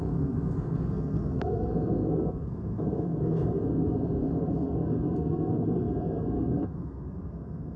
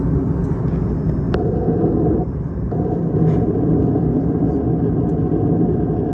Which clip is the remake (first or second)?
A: first